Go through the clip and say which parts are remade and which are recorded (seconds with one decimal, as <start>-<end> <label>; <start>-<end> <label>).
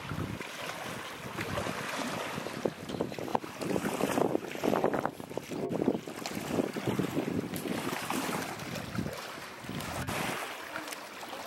0.0-3.3 recorded; 3.3-6.0 remade; 6.0-7.7 recorded; 7.7-8.6 remade; 8.6-11.5 recorded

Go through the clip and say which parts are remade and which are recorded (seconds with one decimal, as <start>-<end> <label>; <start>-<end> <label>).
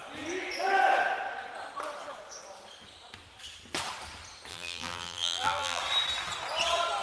0.0-4.5 recorded; 4.5-5.8 remade; 5.8-7.0 recorded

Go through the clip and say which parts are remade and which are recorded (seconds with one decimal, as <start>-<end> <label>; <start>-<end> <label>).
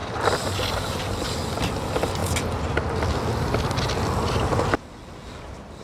0.0-5.8 recorded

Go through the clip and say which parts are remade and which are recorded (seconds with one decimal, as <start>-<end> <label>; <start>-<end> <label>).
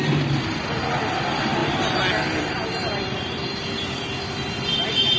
0.0-5.2 recorded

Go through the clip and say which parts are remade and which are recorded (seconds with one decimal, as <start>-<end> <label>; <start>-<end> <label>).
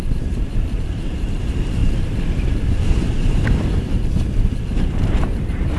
0.0-1.8 remade; 1.8-4.6 recorded; 4.6-5.8 remade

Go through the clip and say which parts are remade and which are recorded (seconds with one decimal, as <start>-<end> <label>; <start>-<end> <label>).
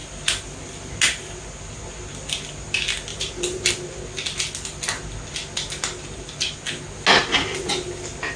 0.0-3.1 recorded; 3.1-3.7 remade; 3.7-8.4 recorded